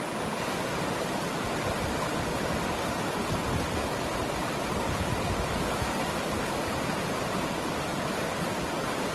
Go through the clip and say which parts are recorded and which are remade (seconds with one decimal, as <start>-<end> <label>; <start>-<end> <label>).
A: 0.0-4.4 recorded; 4.4-5.1 remade; 5.1-7.9 recorded; 7.9-8.4 remade; 8.4-9.1 recorded